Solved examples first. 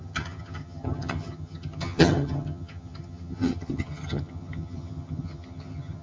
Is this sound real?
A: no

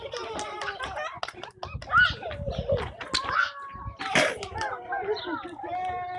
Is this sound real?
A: yes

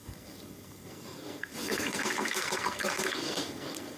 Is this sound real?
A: no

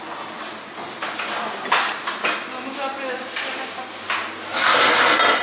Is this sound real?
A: yes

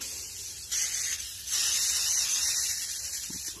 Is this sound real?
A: yes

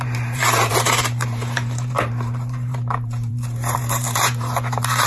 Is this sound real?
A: no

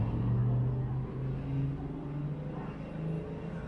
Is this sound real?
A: yes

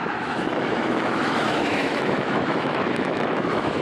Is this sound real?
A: no